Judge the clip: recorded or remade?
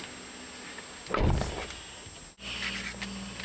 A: recorded